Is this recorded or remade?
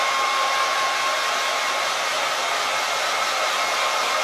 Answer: recorded